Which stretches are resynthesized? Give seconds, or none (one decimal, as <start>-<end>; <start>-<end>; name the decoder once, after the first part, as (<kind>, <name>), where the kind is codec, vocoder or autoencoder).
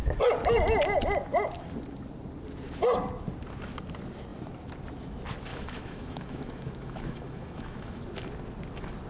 5.5-8.0 (autoencoder, DAC-VAE)